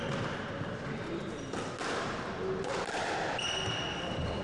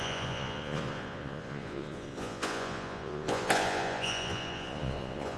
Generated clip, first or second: second